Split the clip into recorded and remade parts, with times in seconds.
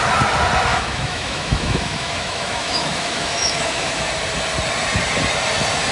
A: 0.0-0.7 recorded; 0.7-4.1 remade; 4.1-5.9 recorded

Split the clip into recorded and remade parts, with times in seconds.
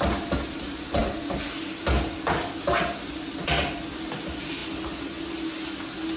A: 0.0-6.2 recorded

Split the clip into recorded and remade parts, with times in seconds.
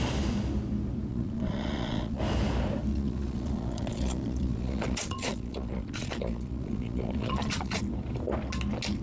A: 0.0-1.1 recorded; 1.1-2.2 remade; 2.2-2.9 recorded; 2.9-7.8 remade; 7.8-9.0 recorded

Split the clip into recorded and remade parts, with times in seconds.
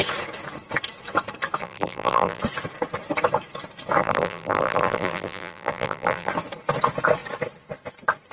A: 0.0-1.6 recorded; 1.6-2.4 remade; 2.4-4.0 recorded; 4.0-6.3 remade; 6.3-8.3 recorded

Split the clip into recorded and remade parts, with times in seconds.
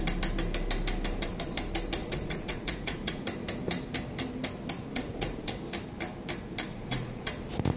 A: 0.0-2.0 recorded; 2.0-3.2 remade; 3.2-4.9 recorded; 4.9-5.5 remade; 5.5-6.7 recorded; 6.7-7.3 remade; 7.3-7.8 recorded